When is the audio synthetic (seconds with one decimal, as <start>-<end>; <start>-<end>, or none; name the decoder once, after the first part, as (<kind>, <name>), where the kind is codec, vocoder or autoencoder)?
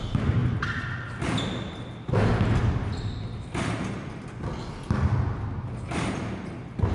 none